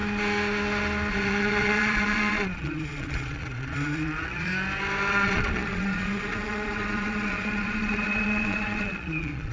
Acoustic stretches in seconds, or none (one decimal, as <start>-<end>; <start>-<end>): 0.0-1.1; 4.5-5.1